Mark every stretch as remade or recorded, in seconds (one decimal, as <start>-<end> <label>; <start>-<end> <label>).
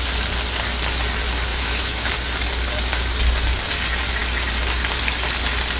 0.0-1.5 recorded; 1.5-2.1 remade; 2.1-5.8 recorded